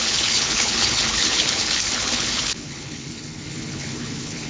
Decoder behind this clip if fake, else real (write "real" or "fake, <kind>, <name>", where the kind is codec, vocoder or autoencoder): fake, codec, HILCodec